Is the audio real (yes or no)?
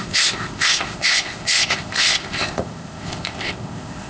no